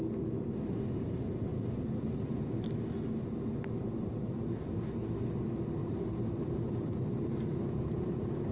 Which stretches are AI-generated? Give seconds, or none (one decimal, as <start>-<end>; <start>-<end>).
5.8-8.5